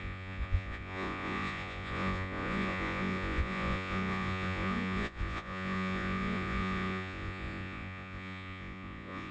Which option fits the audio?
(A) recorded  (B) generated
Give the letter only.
B